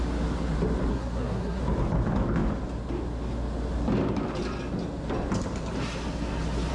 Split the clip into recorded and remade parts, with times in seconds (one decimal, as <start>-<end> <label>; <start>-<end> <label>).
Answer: 0.0-0.9 recorded; 0.9-1.6 remade; 1.6-6.7 recorded